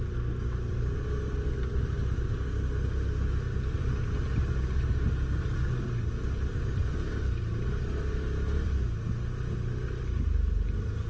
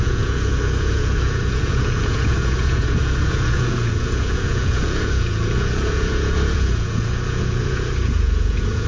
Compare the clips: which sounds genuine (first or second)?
first